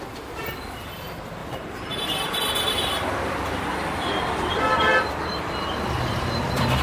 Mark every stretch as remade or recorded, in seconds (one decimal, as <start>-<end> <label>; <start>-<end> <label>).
0.0-1.4 recorded; 1.4-2.1 remade; 2.1-6.8 recorded